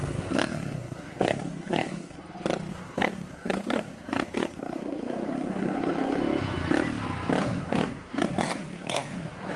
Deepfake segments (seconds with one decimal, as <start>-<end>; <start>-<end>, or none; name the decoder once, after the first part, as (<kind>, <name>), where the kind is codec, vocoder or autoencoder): 0.0-2.2 (codec, SNAC); 2.7-6.2; 7.4-9.6